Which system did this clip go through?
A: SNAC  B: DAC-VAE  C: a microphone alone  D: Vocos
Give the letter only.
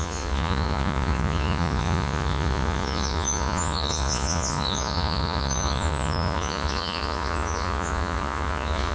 D